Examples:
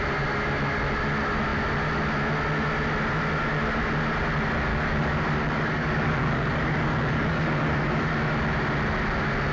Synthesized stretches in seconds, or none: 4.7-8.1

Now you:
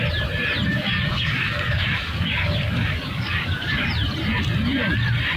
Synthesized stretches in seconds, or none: 0.7-3.9

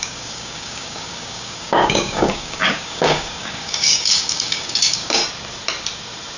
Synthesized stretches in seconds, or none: 0.0-5.2

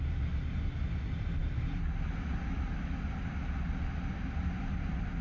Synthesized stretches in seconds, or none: none

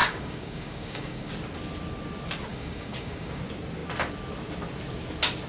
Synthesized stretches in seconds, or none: 0.0-1.3; 2.5-3.4